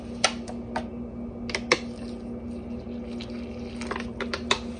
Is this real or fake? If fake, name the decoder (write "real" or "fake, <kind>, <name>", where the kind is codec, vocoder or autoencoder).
real